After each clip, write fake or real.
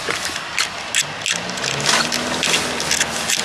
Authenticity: real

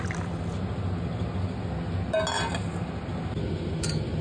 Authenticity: real